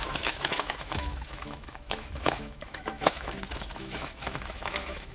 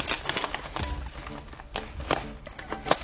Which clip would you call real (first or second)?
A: second